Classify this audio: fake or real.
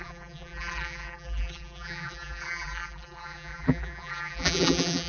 fake